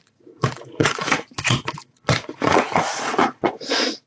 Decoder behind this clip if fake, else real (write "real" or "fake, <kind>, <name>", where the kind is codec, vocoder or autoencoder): fake, vocoder, Vocos